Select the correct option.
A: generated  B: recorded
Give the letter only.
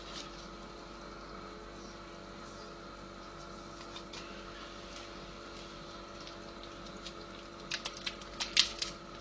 B